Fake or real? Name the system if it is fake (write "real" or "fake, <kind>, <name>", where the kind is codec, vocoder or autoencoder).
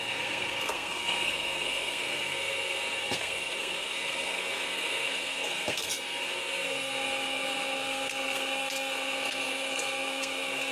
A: fake, codec, SNAC